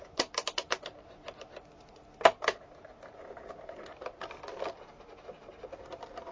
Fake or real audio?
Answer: real